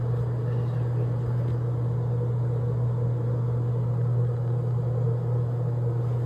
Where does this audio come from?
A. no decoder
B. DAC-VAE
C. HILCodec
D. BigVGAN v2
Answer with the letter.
A